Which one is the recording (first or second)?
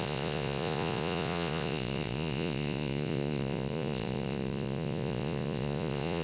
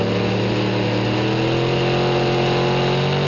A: second